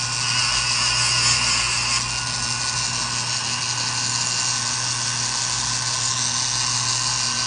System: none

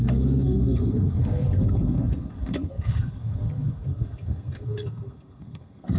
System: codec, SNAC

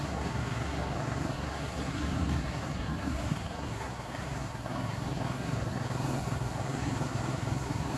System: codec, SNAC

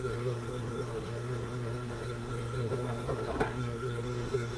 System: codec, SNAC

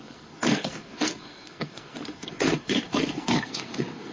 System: codec, SNAC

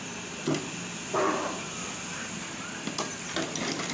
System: none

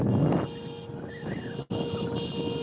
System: none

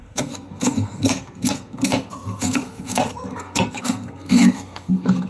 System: codec, SNAC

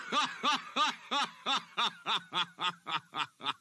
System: none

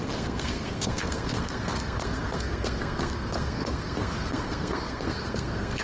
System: codec, SNAC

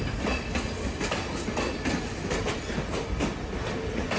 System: none